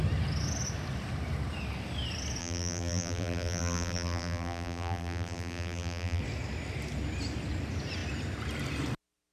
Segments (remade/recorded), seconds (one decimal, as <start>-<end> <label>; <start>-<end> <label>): 0.0-2.4 recorded; 2.4-6.2 remade; 6.2-9.3 recorded